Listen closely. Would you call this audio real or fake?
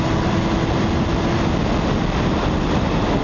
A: real